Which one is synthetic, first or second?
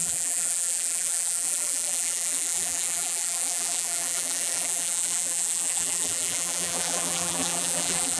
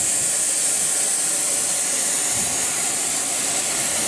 first